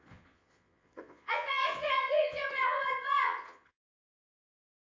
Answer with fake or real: fake